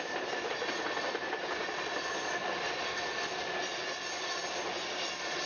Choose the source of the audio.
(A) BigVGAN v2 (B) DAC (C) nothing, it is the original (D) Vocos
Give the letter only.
C